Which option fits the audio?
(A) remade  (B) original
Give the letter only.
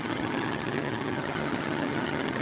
A